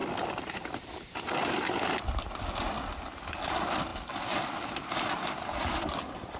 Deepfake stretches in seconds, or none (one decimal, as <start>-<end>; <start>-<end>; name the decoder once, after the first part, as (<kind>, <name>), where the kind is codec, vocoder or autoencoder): none